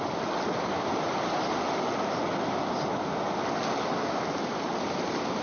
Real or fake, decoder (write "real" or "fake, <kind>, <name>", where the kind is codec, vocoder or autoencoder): real